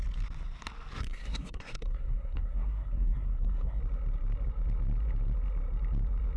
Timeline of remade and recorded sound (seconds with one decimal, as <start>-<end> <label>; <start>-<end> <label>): 0.0-1.0 recorded; 1.0-3.8 remade; 3.8-6.4 recorded